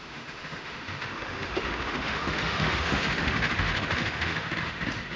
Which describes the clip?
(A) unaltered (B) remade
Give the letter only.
B